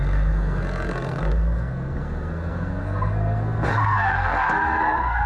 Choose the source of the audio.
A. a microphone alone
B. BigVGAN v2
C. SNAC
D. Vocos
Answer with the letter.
C